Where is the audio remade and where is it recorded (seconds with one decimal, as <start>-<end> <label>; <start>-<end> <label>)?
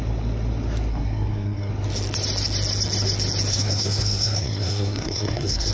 0.0-0.9 recorded; 0.9-1.7 remade; 1.7-3.5 recorded; 3.5-5.7 remade